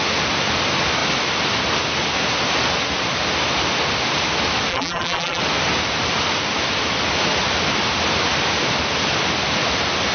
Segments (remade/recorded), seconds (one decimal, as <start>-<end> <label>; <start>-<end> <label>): 0.0-4.7 recorded; 4.7-5.4 remade; 5.4-10.1 recorded